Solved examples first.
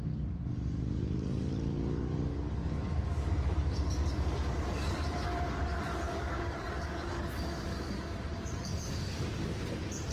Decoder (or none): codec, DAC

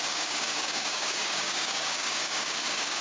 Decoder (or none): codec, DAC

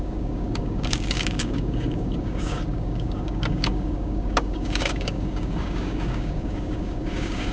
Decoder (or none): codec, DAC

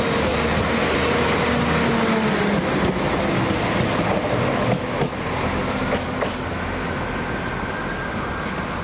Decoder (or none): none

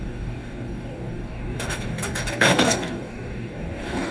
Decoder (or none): codec, DAC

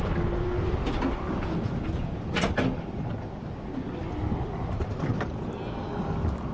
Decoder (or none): none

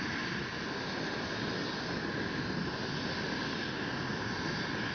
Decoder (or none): none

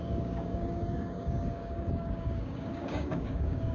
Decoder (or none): codec, DAC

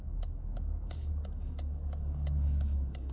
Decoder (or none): codec, DAC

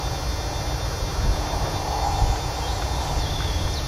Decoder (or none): none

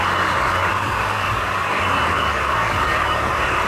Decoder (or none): codec, DAC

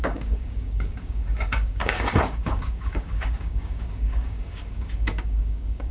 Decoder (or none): codec, DAC